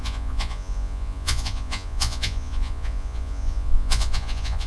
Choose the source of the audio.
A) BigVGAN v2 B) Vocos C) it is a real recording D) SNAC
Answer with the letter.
B